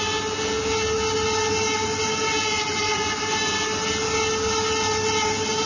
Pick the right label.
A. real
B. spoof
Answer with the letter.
A